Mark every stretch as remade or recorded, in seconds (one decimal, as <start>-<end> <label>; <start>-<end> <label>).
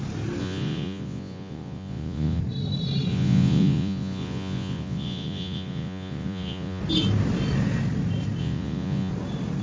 0.0-0.4 recorded; 0.4-2.4 remade; 2.4-3.1 recorded; 3.1-6.8 remade; 6.8-8.4 recorded; 8.4-9.1 remade; 9.1-9.6 recorded